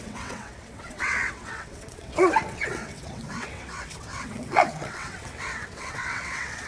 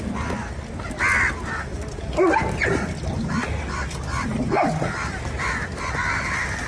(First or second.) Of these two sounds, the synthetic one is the first